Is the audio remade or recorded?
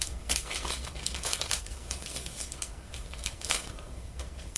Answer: remade